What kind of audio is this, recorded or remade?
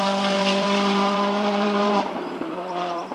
remade